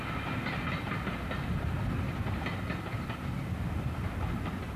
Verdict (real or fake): real